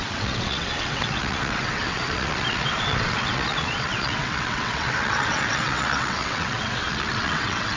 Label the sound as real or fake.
fake